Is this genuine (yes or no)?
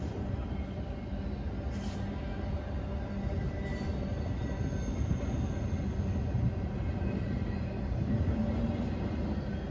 yes